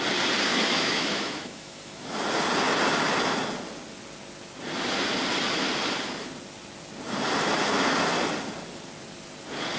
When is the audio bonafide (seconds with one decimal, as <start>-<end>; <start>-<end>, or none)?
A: 0.0-0.5; 2.1-9.8

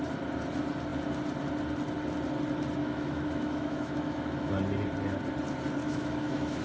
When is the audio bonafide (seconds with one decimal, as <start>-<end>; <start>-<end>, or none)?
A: 0.0-2.8; 4.5-5.8

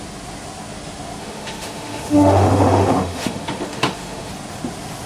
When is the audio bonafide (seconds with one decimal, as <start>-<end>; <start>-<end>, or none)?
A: 0.0-1.2; 4.3-5.1

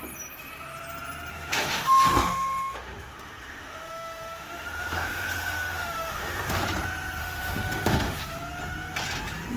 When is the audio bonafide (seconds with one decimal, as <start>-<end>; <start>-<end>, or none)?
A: 0.0-1.3; 6.6-7.2; 8.2-9.6

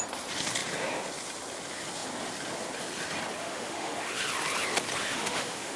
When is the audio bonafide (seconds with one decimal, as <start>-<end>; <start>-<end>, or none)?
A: 0.0-3.4; 4.2-5.0